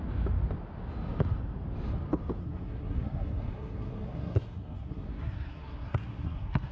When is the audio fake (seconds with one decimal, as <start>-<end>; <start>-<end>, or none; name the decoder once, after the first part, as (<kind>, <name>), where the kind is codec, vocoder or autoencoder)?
2.4-6.7 (codec, SNAC)